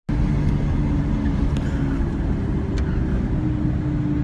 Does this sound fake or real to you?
real